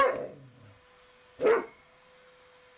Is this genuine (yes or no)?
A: yes